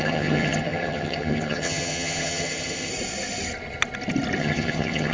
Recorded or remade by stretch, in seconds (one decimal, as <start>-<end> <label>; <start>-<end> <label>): 0.0-2.9 remade; 2.9-4.4 recorded; 4.4-5.1 remade